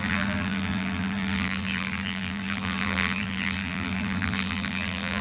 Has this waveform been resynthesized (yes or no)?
yes